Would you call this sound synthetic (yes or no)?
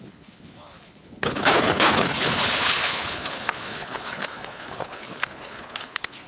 yes